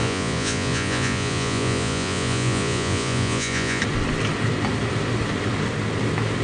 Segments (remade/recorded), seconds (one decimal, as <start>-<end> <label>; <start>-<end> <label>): 0.0-3.8 remade; 3.8-6.4 recorded